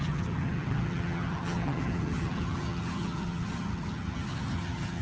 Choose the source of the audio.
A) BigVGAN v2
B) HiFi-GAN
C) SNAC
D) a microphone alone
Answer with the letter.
B